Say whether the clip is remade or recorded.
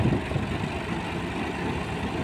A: recorded